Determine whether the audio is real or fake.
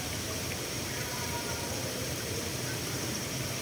fake